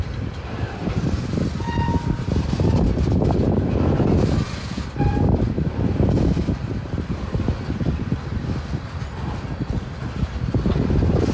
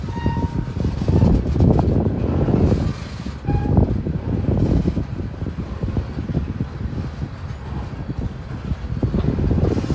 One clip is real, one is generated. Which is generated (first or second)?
first